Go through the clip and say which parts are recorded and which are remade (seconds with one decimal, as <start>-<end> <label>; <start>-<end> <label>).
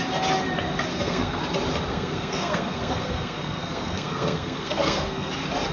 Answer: 0.0-0.9 recorded; 0.9-1.4 remade; 1.4-1.9 recorded; 1.9-5.3 remade; 5.3-5.7 recorded